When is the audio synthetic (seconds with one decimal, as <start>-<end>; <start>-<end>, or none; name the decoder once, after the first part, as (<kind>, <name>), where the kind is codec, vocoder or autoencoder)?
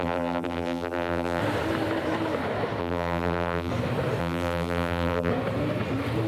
0.0-1.4 (vocoder, BigVGAN v2); 2.8-3.7; 4.2-5.3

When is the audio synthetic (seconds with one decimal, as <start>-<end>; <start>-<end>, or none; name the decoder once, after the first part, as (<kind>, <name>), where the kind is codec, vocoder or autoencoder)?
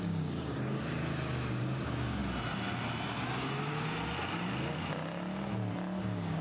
0.0-1.0 (codec, DAC); 1.6-2.2; 6.0-6.4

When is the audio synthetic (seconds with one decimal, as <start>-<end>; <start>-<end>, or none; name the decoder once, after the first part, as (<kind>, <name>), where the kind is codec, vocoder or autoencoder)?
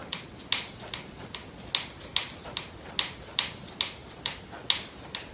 none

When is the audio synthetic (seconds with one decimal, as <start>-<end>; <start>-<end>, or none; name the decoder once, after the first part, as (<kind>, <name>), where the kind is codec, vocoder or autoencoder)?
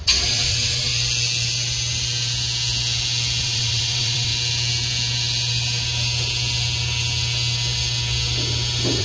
0.0-0.9 (vocoder, WaveNeXt); 3.4-4.3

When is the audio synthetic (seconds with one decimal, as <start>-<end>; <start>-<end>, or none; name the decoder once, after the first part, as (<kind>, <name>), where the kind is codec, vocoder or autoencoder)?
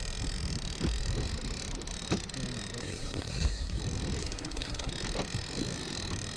2.8-3.8 (codec, SNAC); 4.2-4.9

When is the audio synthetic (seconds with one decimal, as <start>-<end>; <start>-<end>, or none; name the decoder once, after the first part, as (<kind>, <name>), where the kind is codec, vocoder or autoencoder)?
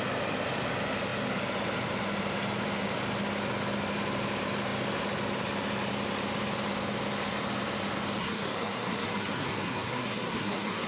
8.2-10.9 (codec, SNAC)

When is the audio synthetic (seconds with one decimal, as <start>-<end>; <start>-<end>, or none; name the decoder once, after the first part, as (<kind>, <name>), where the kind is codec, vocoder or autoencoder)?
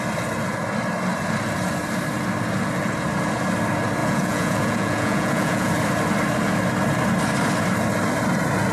4.0-5.7 (vocoder, Vocos)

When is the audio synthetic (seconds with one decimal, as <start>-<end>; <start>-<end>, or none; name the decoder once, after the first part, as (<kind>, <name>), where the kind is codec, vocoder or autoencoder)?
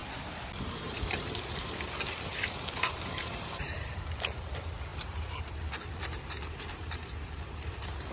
0.6-8.1 (vocoder, BigVGAN v2)